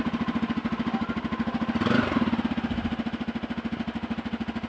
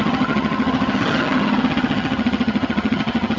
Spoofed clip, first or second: second